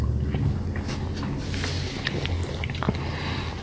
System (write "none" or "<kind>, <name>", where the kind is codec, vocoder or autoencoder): none